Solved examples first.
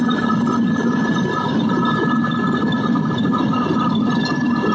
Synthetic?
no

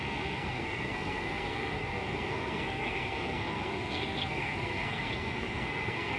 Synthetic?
yes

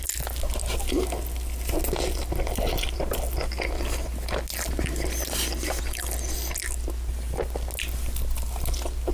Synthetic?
no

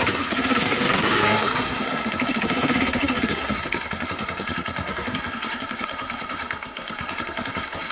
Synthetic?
yes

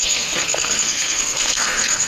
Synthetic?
yes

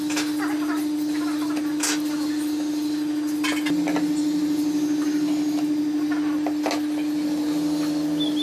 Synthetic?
no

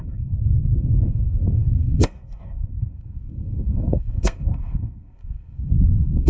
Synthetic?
yes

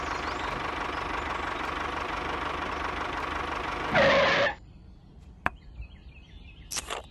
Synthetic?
no